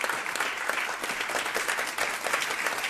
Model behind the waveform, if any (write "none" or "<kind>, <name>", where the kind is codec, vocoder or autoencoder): none